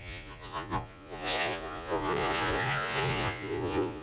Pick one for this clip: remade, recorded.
remade